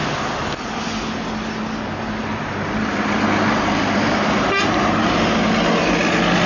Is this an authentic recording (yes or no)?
yes